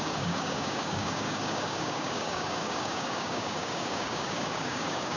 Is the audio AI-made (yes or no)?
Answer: yes